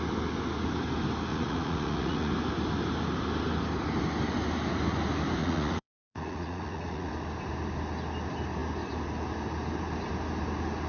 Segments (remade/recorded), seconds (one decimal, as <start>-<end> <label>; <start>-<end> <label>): 0.0-1.3 recorded; 1.3-2.3 remade; 2.3-5.4 recorded; 5.4-7.1 remade; 7.1-10.9 recorded